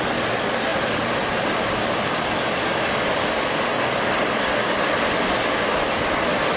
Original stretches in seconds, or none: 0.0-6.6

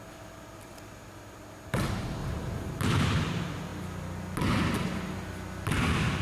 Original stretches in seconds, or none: 0.0-2.2; 3.1-6.2

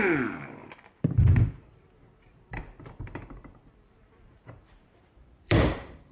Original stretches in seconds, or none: 0.0-0.6; 1.9-2.3